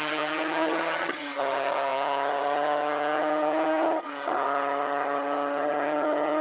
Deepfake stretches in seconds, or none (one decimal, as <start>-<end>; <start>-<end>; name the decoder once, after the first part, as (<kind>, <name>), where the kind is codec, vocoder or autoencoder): 0.0-6.4 (vocoder, HiFi-GAN)